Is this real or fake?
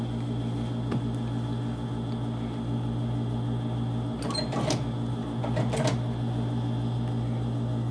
real